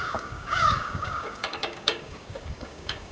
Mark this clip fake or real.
fake